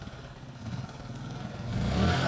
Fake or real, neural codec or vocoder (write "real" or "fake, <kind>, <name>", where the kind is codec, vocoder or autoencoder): fake, codec, SNAC